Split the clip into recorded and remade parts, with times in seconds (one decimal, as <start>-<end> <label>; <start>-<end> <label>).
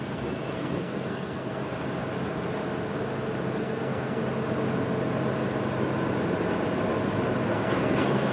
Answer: 0.0-1.7 remade; 1.7-3.6 recorded; 3.6-4.2 remade; 4.2-7.4 recorded; 7.4-8.3 remade